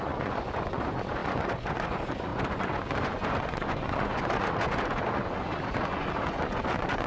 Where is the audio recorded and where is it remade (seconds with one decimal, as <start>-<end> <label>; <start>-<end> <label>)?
0.0-7.1 remade